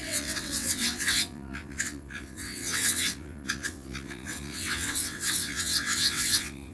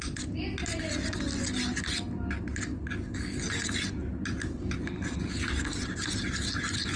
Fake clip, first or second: first